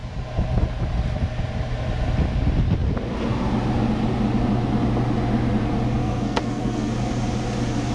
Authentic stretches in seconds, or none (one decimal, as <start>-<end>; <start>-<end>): 0.0-6.0; 6.9-7.9